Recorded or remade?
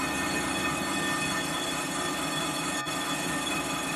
recorded